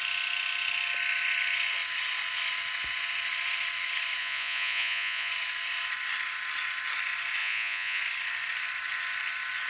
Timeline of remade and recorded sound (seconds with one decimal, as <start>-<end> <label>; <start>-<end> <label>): 0.0-4.2 recorded; 4.2-5.3 remade; 5.3-7.4 recorded; 7.4-8.0 remade; 8.0-9.7 recorded